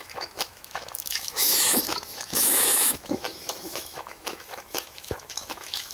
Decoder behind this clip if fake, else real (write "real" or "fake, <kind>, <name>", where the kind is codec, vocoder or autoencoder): fake, autoencoder, DAC-VAE